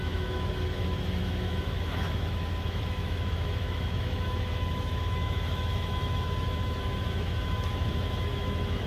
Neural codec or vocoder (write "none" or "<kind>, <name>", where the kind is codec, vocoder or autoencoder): autoencoder, DAC-VAE